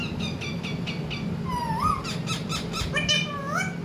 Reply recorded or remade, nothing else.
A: recorded